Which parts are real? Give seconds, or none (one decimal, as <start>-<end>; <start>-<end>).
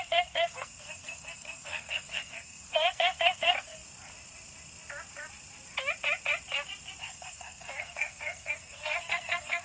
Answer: 3.8-7.0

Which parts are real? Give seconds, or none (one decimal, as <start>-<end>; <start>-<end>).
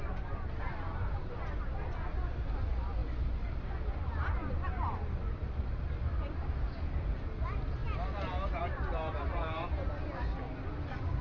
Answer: 0.0-11.2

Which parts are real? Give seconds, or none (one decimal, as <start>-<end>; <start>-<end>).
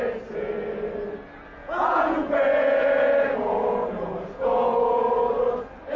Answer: 0.0-1.6; 5.1-6.0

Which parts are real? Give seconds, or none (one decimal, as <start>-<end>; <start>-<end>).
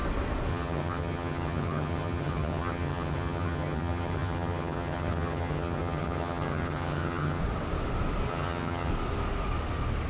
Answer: 0.0-0.5; 7.4-8.3; 8.9-10.1